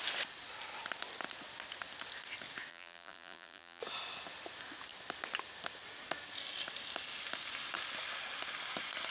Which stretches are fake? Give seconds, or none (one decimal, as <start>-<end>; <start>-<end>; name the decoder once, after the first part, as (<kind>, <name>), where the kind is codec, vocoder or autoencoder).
2.7-3.8 (vocoder, BigVGAN v2)